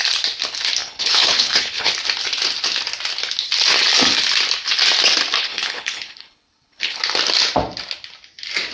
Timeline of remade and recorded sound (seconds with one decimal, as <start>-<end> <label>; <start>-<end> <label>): 0.0-0.8 recorded; 0.8-1.9 remade; 1.9-5.4 recorded; 5.4-7.0 remade; 7.0-8.7 recorded